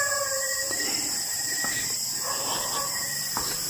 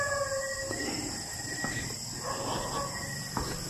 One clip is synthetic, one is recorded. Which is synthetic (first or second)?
first